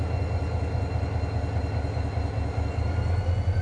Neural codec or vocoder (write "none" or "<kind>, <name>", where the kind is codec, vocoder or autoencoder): none